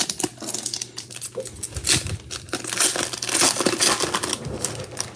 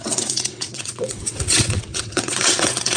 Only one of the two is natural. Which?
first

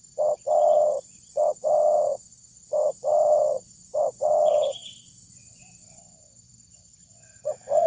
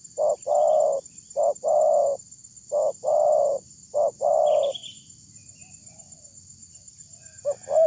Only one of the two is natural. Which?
second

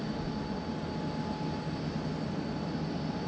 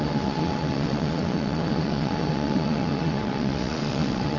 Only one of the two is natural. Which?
first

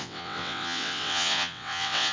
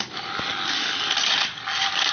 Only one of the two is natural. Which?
second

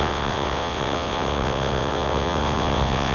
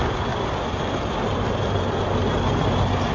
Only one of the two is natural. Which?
second